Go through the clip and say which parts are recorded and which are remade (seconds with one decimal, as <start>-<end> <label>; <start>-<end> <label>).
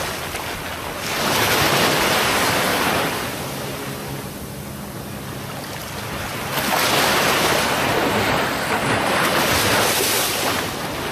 0.0-2.7 recorded; 2.7-3.4 remade; 3.4-8.8 recorded; 8.8-9.9 remade; 9.9-11.1 recorded